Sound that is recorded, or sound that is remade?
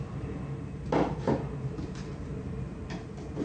remade